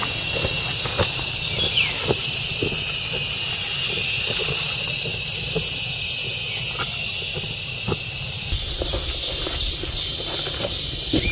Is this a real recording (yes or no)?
yes